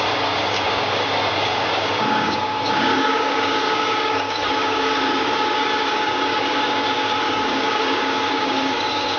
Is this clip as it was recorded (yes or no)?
no